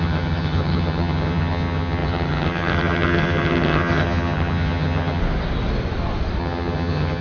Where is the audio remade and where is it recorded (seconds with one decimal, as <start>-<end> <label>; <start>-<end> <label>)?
0.0-5.2 remade; 5.2-6.4 recorded; 6.4-7.2 remade